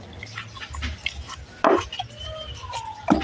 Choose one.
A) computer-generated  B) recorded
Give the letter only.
B